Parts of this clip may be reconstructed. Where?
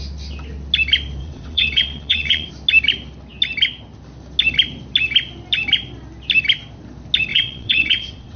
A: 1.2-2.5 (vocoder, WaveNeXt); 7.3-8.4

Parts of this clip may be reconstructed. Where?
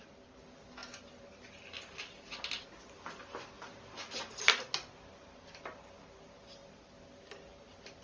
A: none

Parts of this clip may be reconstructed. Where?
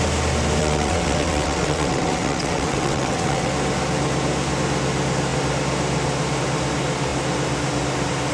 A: 0.6-3.5 (vocoder, WaveNeXt)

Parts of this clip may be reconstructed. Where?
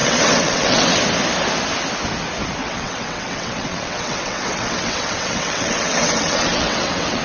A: 0.0-1.0 (vocoder, WaveNeXt); 2.6-7.2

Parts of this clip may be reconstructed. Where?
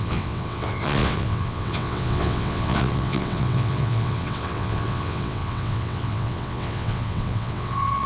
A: 0.0-8.1 (vocoder, WaveNeXt)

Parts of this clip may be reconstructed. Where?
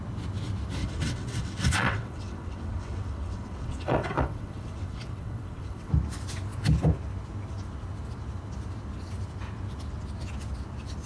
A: 0.8-5.9 (vocoder, WaveNeXt)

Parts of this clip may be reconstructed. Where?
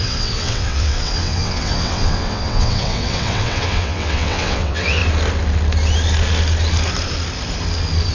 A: 0.0-5.0 (vocoder, WaveNeXt)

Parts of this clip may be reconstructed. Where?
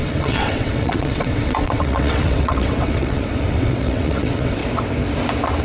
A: 0.0-4.6 (vocoder, WaveNeXt)